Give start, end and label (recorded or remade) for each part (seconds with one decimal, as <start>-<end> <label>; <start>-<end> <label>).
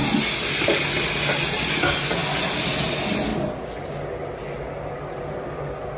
0.0-6.0 recorded